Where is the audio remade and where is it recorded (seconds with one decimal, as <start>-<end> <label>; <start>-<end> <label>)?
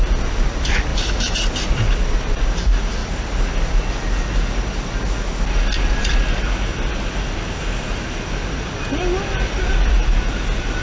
0.0-10.8 recorded